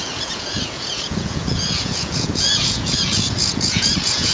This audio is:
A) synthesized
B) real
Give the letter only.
A